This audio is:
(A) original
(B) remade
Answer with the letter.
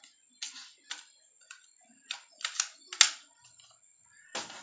A